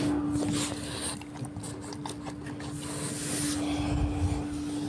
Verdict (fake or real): real